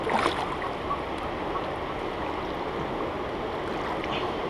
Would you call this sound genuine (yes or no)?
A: yes